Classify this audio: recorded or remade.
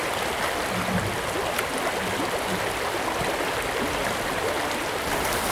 recorded